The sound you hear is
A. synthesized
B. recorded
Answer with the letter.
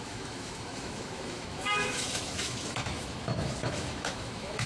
A